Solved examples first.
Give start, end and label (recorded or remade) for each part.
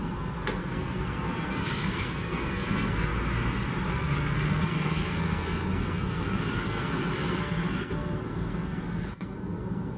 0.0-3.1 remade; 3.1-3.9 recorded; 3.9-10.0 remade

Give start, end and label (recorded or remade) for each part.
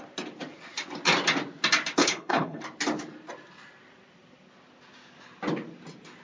0.0-2.0 recorded; 2.0-2.6 remade; 2.6-6.2 recorded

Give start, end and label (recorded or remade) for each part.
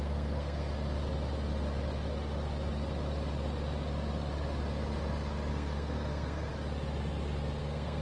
0.0-0.7 remade; 0.7-5.5 recorded; 5.5-6.5 remade; 6.5-7.6 recorded; 7.6-8.0 remade